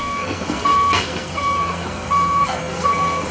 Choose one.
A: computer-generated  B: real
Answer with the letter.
A